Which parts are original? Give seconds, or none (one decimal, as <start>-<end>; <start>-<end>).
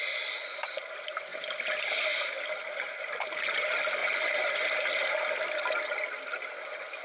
0.0-7.0